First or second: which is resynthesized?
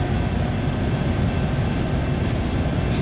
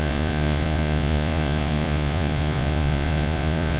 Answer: second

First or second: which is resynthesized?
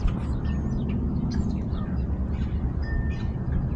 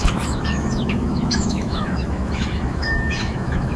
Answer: second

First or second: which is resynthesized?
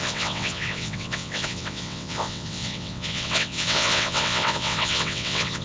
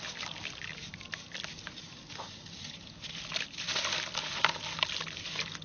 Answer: first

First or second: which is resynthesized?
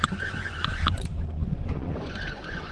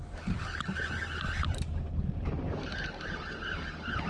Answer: first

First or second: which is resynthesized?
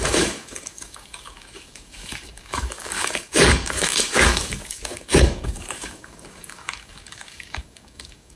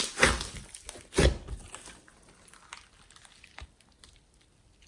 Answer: first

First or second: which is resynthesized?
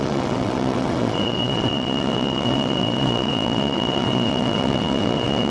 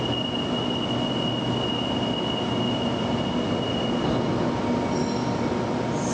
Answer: first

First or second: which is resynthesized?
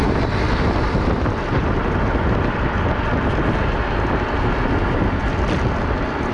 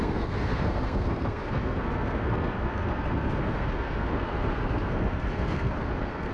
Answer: second